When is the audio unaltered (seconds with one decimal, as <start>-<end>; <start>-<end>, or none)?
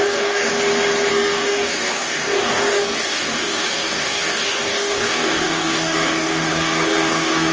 0.5-1.1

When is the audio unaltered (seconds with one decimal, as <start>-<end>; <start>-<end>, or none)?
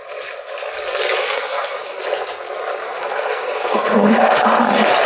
0.0-1.2; 2.0-2.8; 4.3-5.1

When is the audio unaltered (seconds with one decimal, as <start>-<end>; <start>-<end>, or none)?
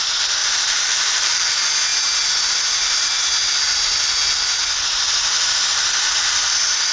0.0-0.4; 1.5-6.9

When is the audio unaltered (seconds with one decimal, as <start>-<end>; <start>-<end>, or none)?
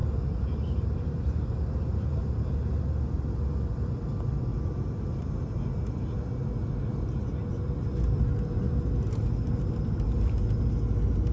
2.2-4.5; 5.3-11.3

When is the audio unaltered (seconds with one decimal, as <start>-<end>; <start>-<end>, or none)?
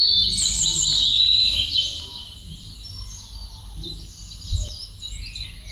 0.0-5.7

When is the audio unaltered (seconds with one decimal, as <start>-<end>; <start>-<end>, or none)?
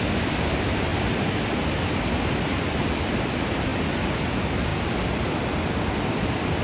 0.0-0.9; 1.9-3.7; 4.2-4.7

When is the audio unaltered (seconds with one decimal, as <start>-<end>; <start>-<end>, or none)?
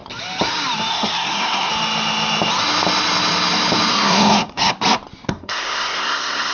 0.0-0.9; 1.7-3.9; 4.7-5.3